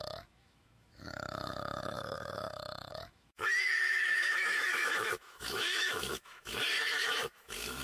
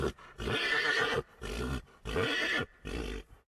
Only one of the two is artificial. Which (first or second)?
first